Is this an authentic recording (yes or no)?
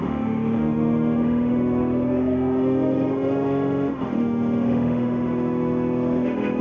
no